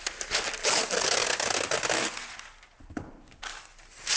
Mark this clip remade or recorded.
recorded